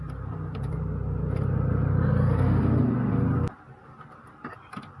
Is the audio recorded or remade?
recorded